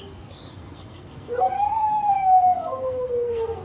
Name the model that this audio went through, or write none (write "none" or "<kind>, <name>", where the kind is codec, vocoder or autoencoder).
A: codec, SNAC